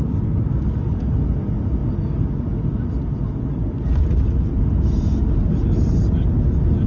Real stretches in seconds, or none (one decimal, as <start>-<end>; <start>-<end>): 0.0-6.9